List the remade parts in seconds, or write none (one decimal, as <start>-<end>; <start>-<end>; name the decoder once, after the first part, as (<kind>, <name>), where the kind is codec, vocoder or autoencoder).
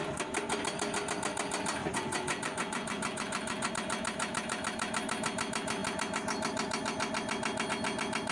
1.8-3.7 (vocoder, Vocos)